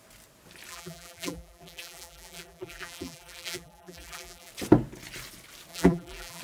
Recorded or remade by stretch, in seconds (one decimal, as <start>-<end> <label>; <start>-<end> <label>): 0.0-0.7 recorded; 0.7-4.5 remade; 4.5-5.7 recorded; 5.7-6.4 remade